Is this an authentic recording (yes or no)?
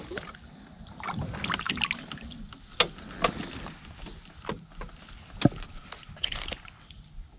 yes